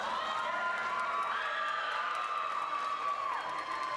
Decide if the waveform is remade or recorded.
recorded